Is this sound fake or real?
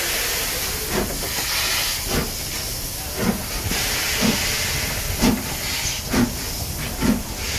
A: real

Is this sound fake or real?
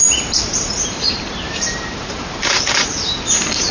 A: fake